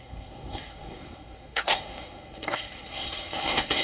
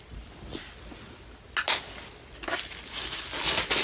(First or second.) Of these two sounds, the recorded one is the second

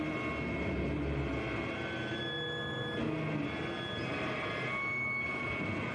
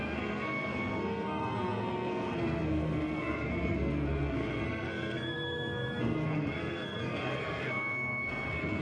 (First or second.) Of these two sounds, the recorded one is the first